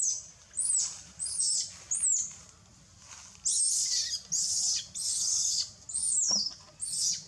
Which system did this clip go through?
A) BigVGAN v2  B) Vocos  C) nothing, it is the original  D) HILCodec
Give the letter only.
C